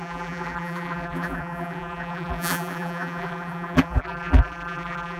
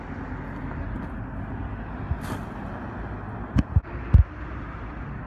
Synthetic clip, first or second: first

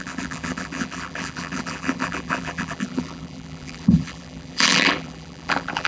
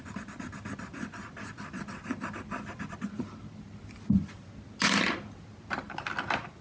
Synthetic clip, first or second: first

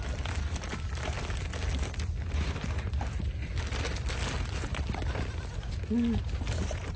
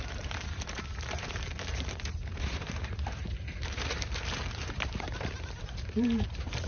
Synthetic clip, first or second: second